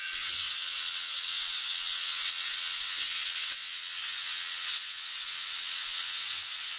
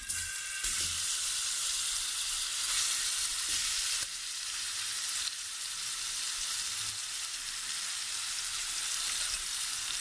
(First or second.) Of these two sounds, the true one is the second